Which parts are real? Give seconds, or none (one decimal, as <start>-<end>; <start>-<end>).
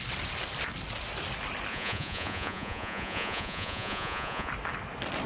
0.0-1.7; 4.5-5.3